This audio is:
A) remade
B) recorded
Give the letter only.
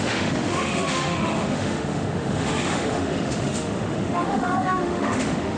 A